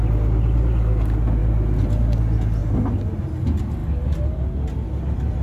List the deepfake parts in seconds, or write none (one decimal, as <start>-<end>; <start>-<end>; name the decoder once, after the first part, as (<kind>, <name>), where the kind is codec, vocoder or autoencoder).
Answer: none